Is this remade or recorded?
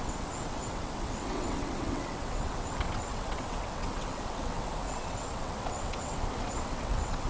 remade